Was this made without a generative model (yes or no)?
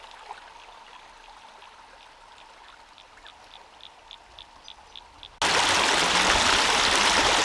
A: yes